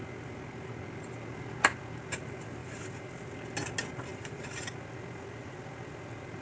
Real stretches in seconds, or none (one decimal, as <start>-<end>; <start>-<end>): 0.0-2.6; 3.1-4.1; 4.7-6.4